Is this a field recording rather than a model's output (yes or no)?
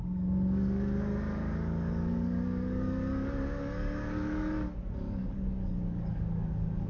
no